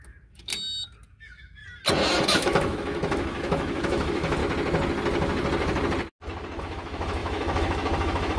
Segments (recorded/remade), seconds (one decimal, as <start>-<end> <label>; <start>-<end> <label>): 0.0-0.5 remade; 0.5-1.1 recorded; 1.1-1.6 remade; 1.6-2.3 recorded; 2.3-4.4 remade; 4.4-6.6 recorded; 6.6-8.4 remade